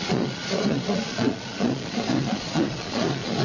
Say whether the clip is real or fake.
fake